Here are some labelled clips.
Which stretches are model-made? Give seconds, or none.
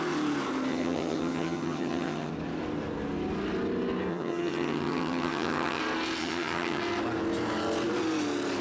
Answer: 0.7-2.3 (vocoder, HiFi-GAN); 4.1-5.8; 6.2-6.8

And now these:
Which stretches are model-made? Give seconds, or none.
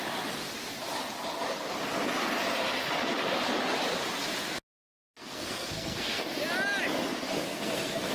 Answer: 5.1-6.2 (codec, SNAC); 7.5-8.1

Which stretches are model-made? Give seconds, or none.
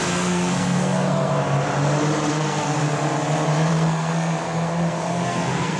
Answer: 0.0-1.3 (codec, SNAC); 2.3-2.8; 3.7-5.8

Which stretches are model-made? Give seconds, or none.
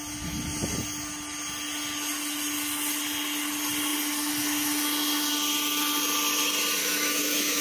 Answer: 6.8-7.6 (autoencoder, DAC-VAE)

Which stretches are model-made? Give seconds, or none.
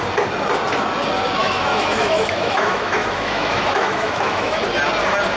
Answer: 1.4-4.6 (autoencoder, DAC-VAE)